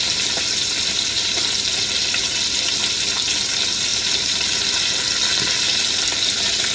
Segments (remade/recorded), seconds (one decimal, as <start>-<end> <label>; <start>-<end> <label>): 0.0-3.9 recorded; 3.9-4.8 remade; 4.8-6.7 recorded

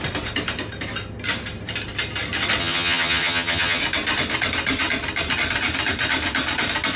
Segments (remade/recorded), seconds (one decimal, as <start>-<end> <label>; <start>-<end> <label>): 0.0-2.6 recorded; 2.6-3.8 remade; 3.8-7.0 recorded

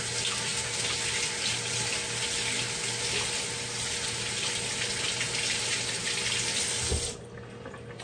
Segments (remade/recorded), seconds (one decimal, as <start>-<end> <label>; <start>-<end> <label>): 0.0-8.0 recorded

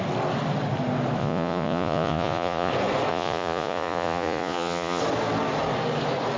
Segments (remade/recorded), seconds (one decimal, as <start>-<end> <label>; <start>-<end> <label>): 0.0-1.2 recorded; 1.2-2.7 remade; 2.7-3.1 recorded; 3.1-5.0 remade; 5.0-6.4 recorded

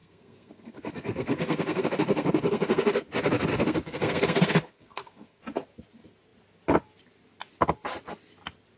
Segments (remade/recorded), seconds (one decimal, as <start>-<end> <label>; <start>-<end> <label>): 0.0-3.0 remade; 3.0-3.5 recorded; 3.5-5.4 remade; 5.4-8.8 recorded